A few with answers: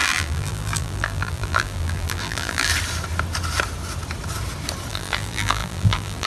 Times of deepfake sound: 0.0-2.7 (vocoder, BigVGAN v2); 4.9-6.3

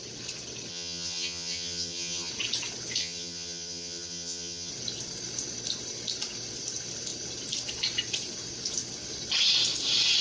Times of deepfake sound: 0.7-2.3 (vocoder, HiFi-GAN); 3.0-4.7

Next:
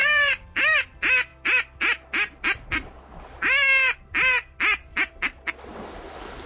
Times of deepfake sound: 0.0-0.6 (vocoder, BigVGAN v2)